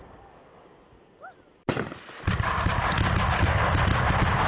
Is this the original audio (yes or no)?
yes